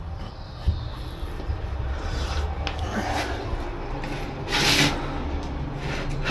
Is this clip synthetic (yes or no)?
no